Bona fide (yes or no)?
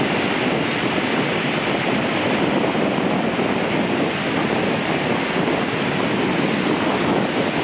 yes